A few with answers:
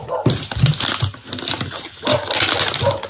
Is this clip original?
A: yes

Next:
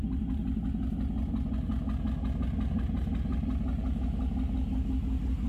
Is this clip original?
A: yes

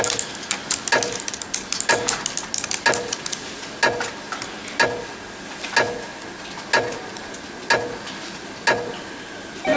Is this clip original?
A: yes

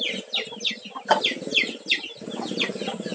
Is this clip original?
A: yes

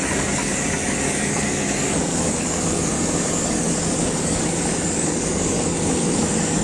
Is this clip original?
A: no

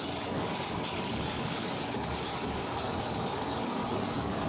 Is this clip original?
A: no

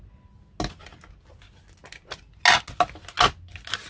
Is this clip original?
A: yes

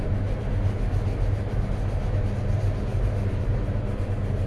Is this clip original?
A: yes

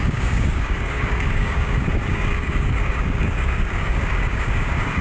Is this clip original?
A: no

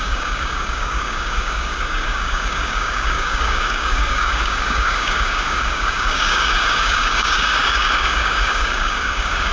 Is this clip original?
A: no